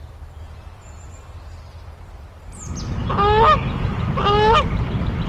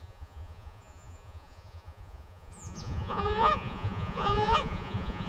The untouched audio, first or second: first